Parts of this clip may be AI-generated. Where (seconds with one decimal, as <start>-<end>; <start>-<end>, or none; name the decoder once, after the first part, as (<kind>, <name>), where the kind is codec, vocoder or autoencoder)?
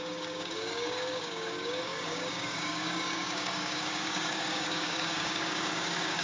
0.0-6.2 (codec, DAC)